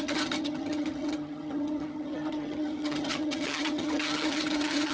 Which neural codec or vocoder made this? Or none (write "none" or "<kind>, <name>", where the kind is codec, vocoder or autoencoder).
vocoder, HiFi-GAN